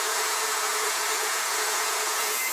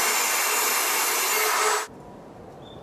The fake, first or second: first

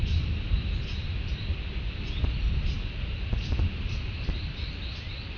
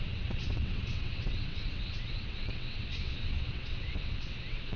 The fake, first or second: second